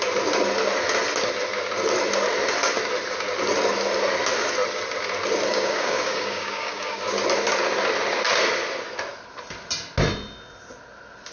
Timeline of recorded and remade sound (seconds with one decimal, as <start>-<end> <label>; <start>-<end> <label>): 0.0-5.5 recorded; 5.5-7.0 remade; 7.0-11.3 recorded